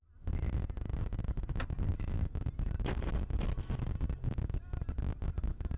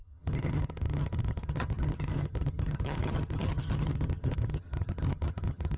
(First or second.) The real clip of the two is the first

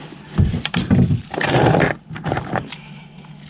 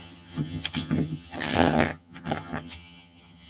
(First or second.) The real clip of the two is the first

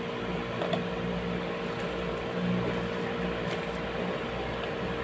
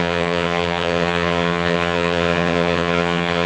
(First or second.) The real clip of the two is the first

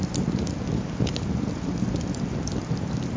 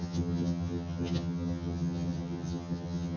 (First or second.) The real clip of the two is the first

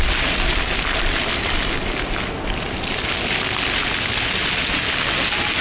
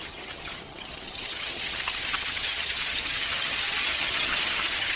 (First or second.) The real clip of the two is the first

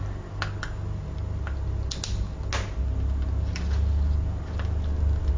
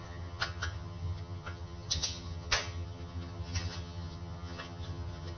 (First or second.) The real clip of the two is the first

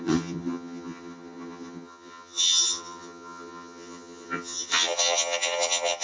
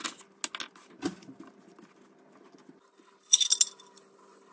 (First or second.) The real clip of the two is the second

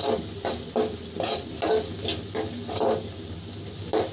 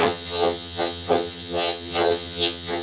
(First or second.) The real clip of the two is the first